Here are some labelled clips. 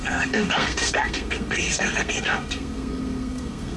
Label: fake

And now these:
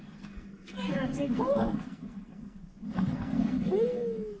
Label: fake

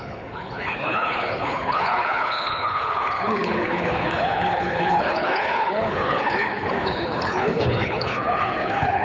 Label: fake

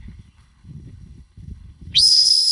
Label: fake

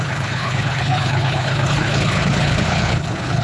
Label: fake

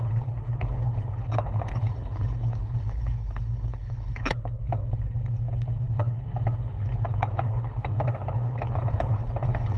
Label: fake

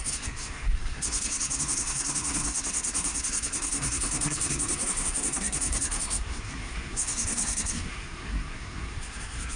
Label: fake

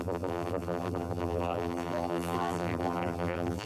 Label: fake